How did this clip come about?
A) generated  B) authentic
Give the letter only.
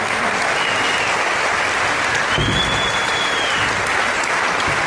B